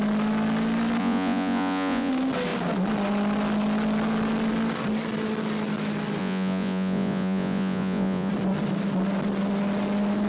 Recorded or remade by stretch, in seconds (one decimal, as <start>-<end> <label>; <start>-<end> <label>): 0.0-1.0 recorded; 1.0-2.1 remade; 2.1-6.2 recorded; 6.2-8.3 remade; 8.3-10.3 recorded